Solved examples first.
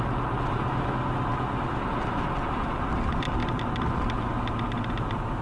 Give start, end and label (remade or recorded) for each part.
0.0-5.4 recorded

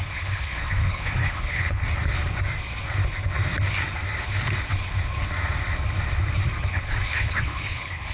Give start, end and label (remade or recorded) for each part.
0.0-1.8 remade; 1.8-6.7 recorded; 6.7-8.1 remade